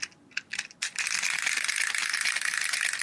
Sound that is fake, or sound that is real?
real